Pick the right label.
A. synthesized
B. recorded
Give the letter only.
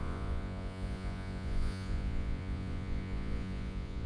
A